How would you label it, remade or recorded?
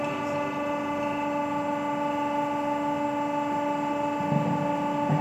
recorded